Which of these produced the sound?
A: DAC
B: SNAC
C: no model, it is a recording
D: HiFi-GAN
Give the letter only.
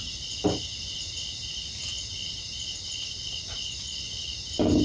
C